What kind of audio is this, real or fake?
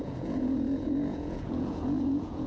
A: fake